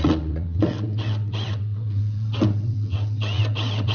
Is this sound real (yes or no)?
no